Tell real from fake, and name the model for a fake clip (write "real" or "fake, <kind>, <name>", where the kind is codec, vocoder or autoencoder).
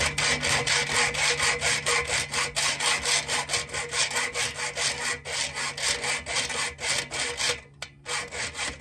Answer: real